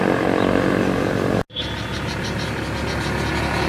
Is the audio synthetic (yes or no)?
no